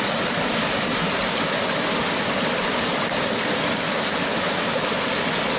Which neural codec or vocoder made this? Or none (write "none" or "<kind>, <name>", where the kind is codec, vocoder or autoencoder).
none